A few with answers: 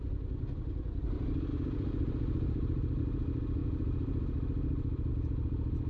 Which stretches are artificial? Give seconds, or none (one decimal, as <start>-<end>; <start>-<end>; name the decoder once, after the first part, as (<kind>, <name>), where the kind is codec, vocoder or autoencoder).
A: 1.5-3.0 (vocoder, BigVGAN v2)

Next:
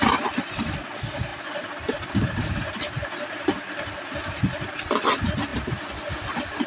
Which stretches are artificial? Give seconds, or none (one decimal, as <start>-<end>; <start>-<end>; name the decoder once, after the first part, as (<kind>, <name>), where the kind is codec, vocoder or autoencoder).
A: none

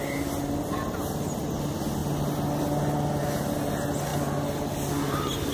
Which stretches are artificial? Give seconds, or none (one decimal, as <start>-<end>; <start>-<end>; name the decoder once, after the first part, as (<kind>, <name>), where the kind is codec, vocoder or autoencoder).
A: none

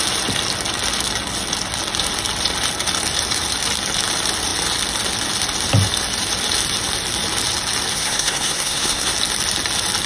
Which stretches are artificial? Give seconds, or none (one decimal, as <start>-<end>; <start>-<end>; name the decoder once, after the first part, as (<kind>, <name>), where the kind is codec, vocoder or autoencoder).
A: 7.9-9.1 (codec, SNAC)

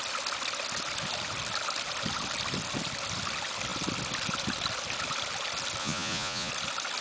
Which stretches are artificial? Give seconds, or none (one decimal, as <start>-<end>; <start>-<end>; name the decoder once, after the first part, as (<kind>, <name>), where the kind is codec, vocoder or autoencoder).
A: 5.8-6.5 (vocoder, Vocos)